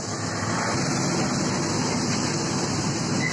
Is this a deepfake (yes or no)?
no